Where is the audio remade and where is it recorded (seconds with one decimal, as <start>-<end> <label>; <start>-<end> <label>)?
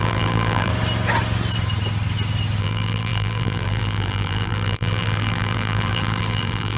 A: 0.0-0.7 remade; 0.7-2.6 recorded; 2.6-6.8 remade